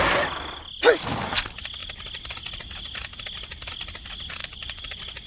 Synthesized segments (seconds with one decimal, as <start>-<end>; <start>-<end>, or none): 4.4-5.3